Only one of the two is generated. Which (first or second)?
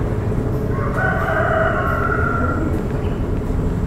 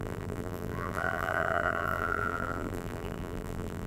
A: second